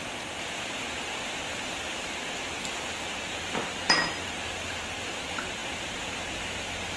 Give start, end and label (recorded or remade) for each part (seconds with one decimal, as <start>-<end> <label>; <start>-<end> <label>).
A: 0.0-3.6 remade; 3.6-4.3 recorded; 4.3-7.0 remade